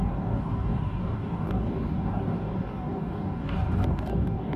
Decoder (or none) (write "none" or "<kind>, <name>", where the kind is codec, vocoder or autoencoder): codec, DAC